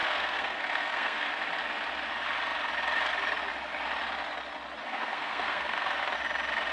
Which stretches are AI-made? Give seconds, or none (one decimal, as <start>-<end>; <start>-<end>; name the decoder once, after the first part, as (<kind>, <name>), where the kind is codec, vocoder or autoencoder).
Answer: 0.0-1.3 (codec, SNAC); 4.8-6.0